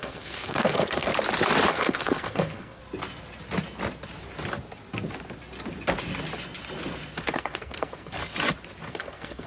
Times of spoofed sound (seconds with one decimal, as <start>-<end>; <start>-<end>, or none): 0.0-1.1; 1.7-2.8; 7.2-8.2; 8.9-9.5

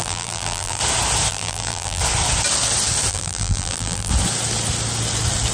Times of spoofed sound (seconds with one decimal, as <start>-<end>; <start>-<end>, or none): 0.0-0.8; 1.3-2.0; 3.1-4.1

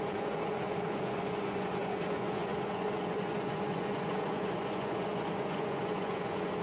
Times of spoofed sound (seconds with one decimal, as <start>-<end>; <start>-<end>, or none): 0.0-6.6

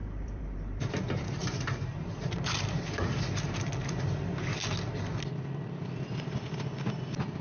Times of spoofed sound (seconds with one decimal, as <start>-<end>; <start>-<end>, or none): 0.0-0.9; 1.4-4.4

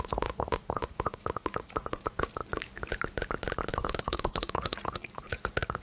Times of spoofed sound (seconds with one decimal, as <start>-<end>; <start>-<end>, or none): 0.0-2.4; 3.7-5.8

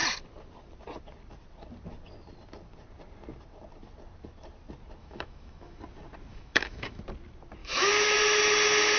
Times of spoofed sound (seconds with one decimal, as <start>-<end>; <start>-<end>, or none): 5.0-5.8; 6.3-7.0; 7.6-8.2

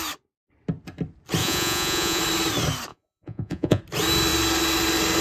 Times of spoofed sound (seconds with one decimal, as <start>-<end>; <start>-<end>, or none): 1.4-2.2; 2.9-3.8

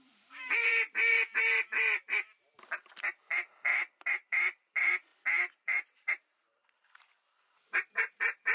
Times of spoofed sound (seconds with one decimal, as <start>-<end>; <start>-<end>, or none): 0.0-0.7; 3.1-3.7; 4.3-5.1; 7.4-8.5